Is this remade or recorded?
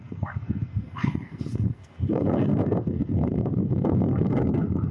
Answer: remade